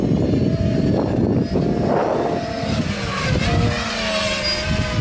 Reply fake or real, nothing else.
real